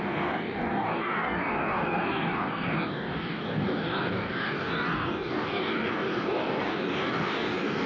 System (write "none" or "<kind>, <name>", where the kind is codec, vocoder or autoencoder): codec, DAC